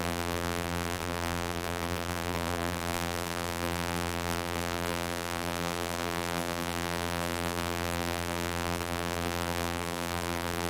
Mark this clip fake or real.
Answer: fake